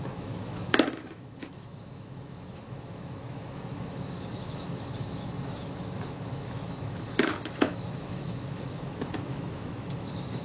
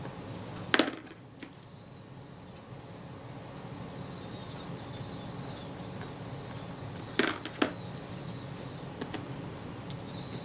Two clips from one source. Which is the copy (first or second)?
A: first